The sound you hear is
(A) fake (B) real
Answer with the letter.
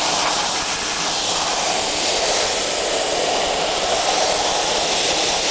B